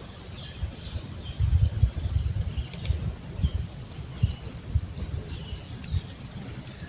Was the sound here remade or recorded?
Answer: recorded